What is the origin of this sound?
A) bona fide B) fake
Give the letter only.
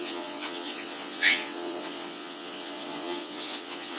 B